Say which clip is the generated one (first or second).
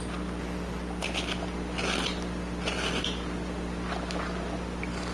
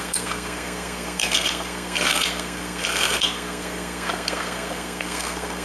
second